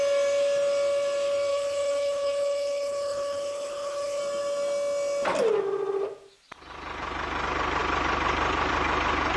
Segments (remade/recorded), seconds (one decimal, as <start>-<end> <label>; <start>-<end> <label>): 0.0-1.5 recorded; 1.5-4.2 remade; 4.2-9.4 recorded